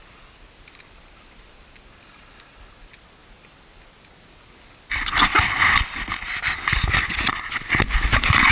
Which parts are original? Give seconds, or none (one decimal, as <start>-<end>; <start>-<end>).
0.0-8.5